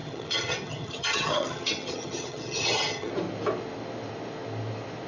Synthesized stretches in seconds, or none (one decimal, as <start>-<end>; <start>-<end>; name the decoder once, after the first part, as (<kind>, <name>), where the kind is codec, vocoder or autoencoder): 0.0-3.1 (vocoder, HiFi-GAN)